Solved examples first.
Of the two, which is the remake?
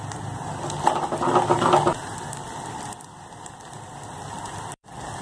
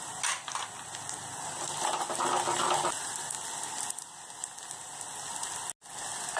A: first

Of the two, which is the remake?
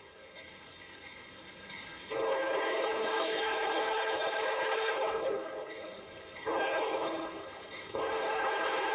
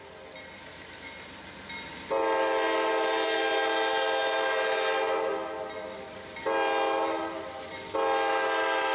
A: first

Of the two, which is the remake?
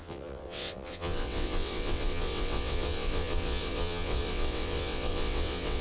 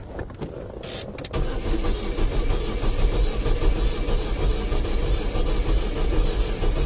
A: first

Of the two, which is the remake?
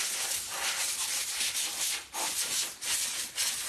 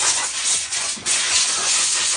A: second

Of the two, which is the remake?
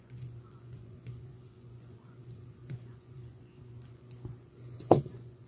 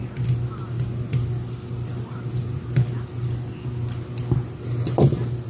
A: first